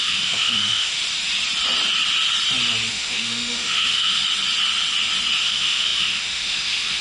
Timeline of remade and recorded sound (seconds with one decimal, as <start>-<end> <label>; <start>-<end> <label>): 0.0-1.0 remade; 1.0-2.9 recorded; 2.9-4.2 remade; 4.2-5.4 recorded; 5.4-7.0 remade